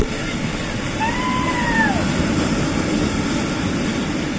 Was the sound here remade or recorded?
recorded